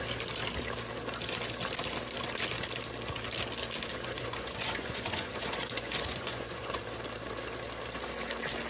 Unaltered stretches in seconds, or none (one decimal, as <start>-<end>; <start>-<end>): 0.0-3.9; 6.8-8.7